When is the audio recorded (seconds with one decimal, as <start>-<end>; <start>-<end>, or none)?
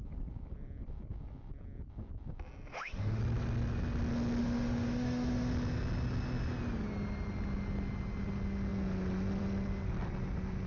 0.0-2.7; 3.2-4.4; 5.5-10.7